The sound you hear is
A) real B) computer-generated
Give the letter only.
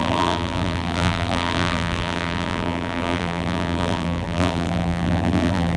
B